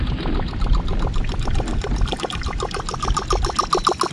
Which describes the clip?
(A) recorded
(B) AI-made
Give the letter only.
A